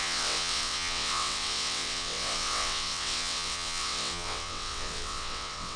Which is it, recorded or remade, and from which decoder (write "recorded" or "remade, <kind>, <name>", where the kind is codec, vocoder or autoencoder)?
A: remade, vocoder, WaveNeXt